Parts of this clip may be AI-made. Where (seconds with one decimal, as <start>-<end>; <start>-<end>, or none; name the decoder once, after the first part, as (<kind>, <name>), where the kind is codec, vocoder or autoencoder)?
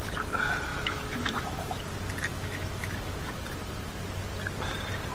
0.7-1.8 (autoencoder, DAC-VAE); 2.3-3.2